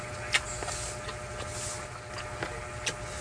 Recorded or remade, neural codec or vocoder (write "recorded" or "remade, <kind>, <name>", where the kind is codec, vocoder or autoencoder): recorded